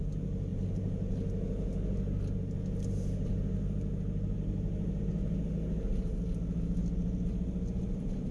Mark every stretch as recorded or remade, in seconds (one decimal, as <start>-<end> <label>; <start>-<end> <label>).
0.0-8.3 recorded